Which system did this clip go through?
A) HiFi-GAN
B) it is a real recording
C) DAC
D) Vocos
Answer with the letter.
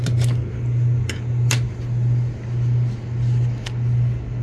B